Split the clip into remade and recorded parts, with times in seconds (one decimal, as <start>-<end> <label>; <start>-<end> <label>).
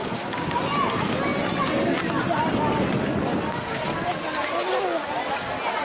0.0-0.6 remade; 0.6-5.8 recorded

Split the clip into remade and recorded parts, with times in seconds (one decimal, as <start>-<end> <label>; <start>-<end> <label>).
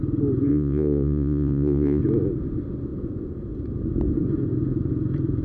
0.0-0.5 recorded; 0.5-2.0 remade; 2.0-5.4 recorded